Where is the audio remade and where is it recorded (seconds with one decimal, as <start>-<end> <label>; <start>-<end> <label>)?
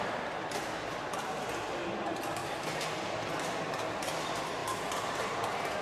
0.0-5.8 recorded